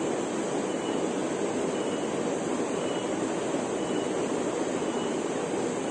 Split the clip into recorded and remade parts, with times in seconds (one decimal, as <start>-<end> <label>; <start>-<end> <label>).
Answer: 0.0-5.9 recorded